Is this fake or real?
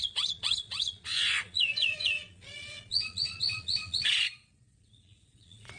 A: fake